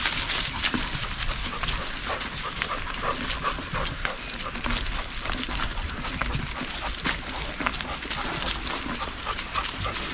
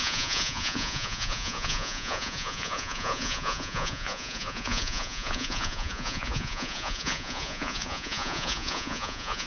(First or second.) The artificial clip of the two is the second